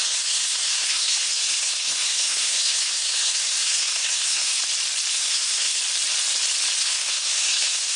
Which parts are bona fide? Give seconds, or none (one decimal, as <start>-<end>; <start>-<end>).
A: 4.6-5.1; 5.8-6.8